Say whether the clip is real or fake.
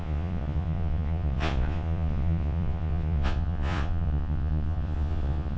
fake